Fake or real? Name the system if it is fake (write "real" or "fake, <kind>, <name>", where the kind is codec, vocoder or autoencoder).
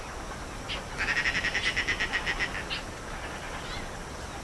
real